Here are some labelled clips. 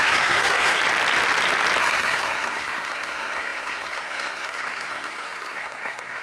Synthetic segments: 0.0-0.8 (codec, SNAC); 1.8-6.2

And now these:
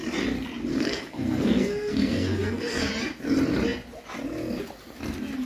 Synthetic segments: 0.7-2.9 (codec, SNAC)

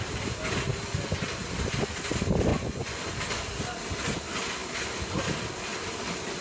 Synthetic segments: 2.5-3.0 (vocoder, Vocos)

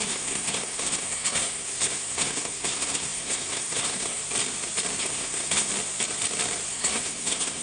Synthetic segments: 0.0-4.2 (codec, SNAC); 5.0-5.7; 6.7-7.6

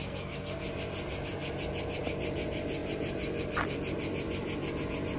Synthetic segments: 0.0-0.6 (codec, SNAC)

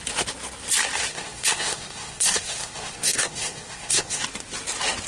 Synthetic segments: 1.1-4.2 (codec, SNAC)

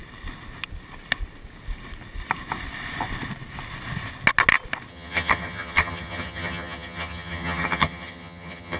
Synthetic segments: 4.9-8.8 (vocoder, HiFi-GAN)